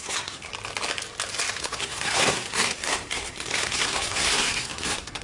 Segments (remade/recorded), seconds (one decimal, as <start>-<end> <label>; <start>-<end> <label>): 0.0-0.5 remade; 0.5-1.6 recorded; 1.6-5.2 remade